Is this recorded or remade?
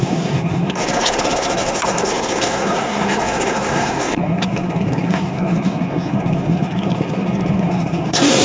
remade